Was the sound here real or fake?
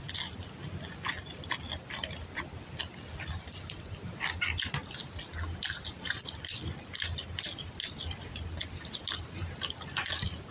real